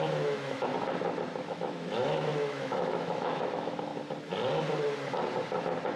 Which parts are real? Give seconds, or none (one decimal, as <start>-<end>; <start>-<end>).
0.7-1.4; 3.9-6.0